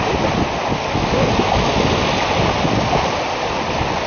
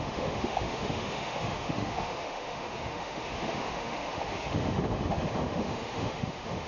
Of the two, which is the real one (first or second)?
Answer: first